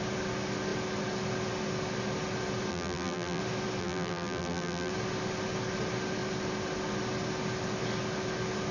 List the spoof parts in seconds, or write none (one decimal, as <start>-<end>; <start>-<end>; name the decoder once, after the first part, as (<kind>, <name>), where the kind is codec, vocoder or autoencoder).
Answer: 2.7-3.4 (vocoder, BigVGAN v2); 3.8-4.9